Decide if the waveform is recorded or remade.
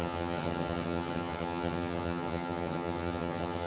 remade